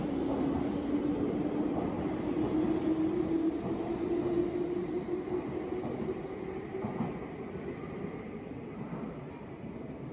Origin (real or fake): real